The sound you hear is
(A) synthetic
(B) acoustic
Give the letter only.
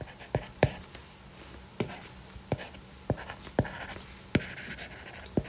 B